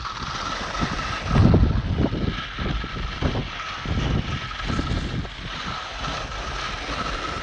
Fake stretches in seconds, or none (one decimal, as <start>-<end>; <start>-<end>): none